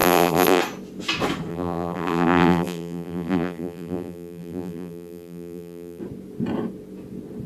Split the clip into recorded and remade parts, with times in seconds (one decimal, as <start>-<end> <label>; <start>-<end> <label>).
0.0-0.6 remade; 0.6-1.5 recorded; 1.5-6.0 remade; 6.0-7.5 recorded